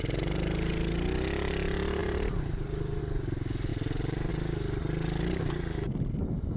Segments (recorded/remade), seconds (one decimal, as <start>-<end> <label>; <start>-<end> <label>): 0.0-2.0 recorded; 2.0-3.0 remade; 3.0-3.7 recorded; 3.7-4.3 remade; 4.3-6.6 recorded